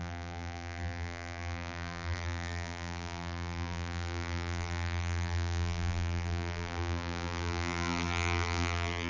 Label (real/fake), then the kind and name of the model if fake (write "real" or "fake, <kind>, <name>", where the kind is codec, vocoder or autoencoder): fake, vocoder, BigVGAN v2